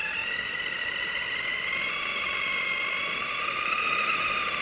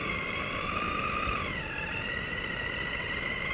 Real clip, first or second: first